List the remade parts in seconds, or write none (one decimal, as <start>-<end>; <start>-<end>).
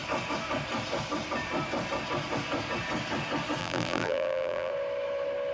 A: 3.6-4.7